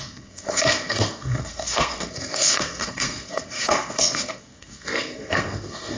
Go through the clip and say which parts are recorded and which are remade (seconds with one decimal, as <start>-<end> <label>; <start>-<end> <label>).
0.0-6.0 remade